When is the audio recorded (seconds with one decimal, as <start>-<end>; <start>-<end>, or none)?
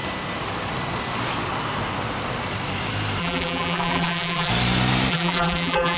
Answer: 0.0-3.2; 4.5-5.1